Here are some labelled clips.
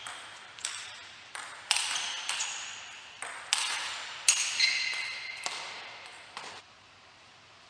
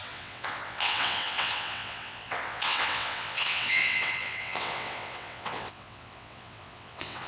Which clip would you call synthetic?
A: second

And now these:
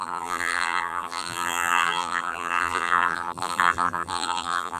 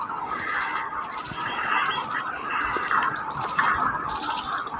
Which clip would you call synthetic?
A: first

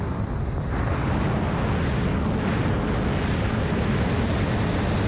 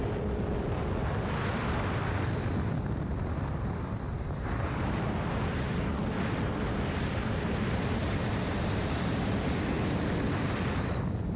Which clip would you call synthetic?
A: second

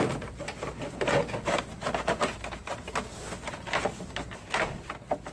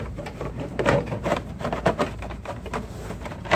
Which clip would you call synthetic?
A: second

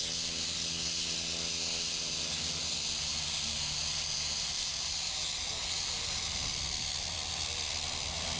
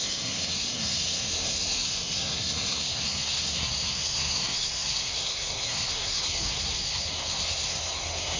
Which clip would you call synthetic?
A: second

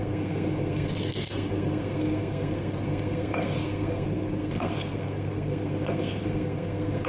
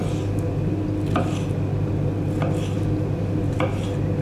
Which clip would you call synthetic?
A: first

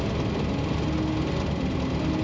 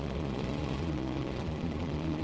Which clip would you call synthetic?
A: second